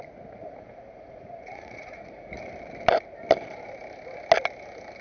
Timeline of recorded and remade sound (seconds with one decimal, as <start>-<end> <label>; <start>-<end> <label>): 0.0-0.4 recorded; 0.4-2.3 remade; 2.3-5.0 recorded